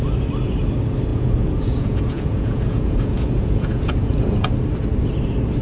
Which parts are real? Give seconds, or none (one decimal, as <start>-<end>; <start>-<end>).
0.0-1.1; 4.5-5.6